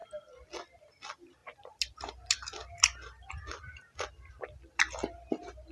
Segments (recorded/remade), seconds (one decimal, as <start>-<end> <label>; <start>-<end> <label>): 0.0-5.7 recorded